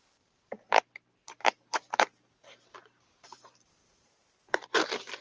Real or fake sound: fake